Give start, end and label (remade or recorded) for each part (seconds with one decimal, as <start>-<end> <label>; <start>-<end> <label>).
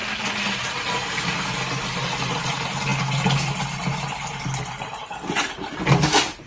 0.0-6.5 recorded